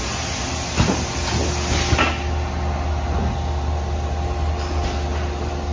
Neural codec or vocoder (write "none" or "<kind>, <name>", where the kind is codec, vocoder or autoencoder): none